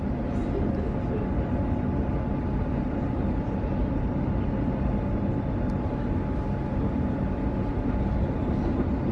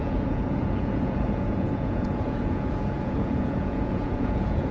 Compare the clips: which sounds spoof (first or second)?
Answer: second